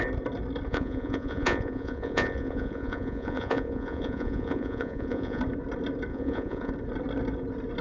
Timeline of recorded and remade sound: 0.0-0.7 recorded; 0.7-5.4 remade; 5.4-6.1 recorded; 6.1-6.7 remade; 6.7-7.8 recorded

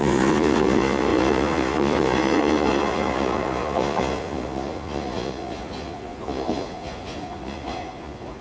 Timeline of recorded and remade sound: 0.0-8.4 remade

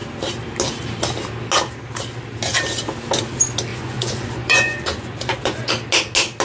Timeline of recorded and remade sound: 0.0-3.7 recorded; 3.7-5.7 remade; 5.7-6.4 recorded

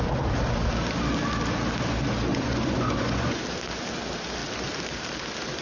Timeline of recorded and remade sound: 0.0-2.3 recorded; 2.3-3.4 remade; 3.4-5.6 recorded

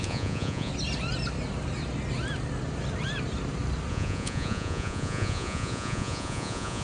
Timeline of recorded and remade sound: 0.0-0.7 remade; 0.7-3.9 recorded; 3.9-6.8 remade

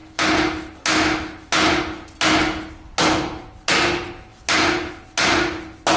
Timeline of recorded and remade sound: 0.0-6.0 recorded

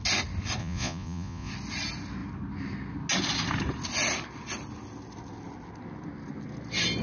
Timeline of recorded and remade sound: 0.0-0.6 recorded; 0.6-1.5 remade; 1.5-7.0 recorded